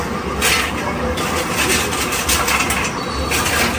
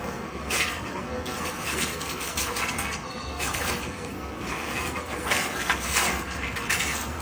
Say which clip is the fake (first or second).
second